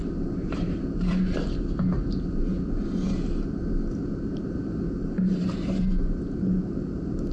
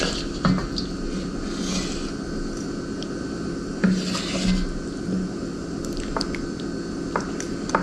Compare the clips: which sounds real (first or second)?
second